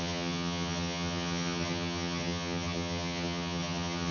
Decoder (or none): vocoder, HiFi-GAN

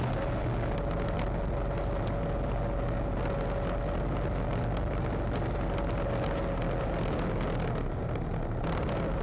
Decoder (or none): none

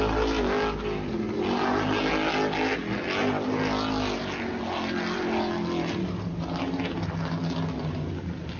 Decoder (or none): none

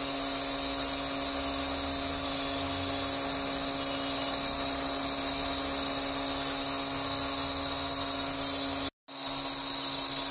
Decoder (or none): none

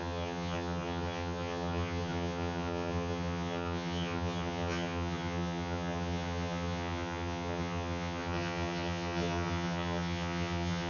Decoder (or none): vocoder, HiFi-GAN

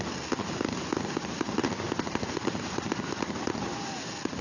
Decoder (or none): none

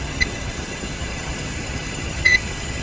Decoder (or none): vocoder, HiFi-GAN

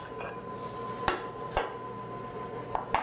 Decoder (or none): none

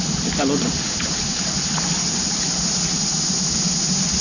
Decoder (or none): none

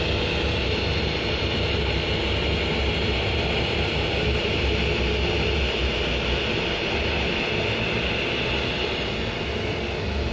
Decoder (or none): none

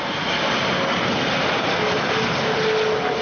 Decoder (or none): none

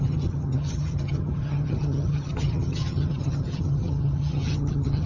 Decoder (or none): vocoder, HiFi-GAN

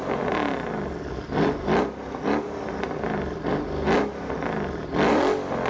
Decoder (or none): none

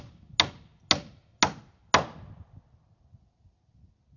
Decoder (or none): none